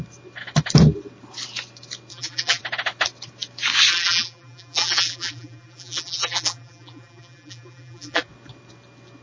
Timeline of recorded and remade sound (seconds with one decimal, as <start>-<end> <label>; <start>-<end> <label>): 0.0-2.1 recorded; 2.1-2.6 remade; 2.6-3.9 recorded; 3.9-8.2 remade; 8.2-9.2 recorded